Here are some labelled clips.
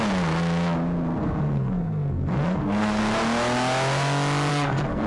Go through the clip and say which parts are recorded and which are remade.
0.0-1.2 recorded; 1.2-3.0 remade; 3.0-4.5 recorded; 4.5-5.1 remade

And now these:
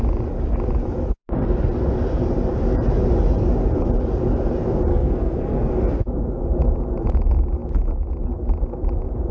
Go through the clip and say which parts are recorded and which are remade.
0.0-4.9 recorded; 4.9-5.7 remade; 5.7-9.3 recorded

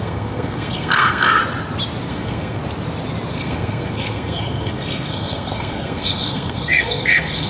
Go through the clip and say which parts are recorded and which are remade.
0.0-1.4 remade; 1.4-2.1 recorded; 2.1-2.6 remade; 2.6-3.3 recorded; 3.3-7.5 remade